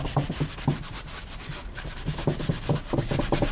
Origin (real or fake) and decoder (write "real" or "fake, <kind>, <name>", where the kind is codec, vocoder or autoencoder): real